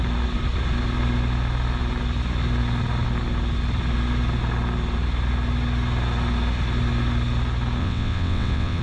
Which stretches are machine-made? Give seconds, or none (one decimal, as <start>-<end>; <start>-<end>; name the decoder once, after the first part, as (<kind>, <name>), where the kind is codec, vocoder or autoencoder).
7.8-8.8 (vocoder, WaveNeXt)